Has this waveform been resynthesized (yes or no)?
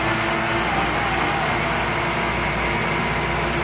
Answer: no